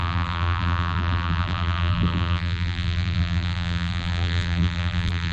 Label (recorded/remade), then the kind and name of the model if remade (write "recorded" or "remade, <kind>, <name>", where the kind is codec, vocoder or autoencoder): remade, vocoder, BigVGAN v2